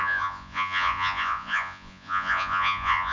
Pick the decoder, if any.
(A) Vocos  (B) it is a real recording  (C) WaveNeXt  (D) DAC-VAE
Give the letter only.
A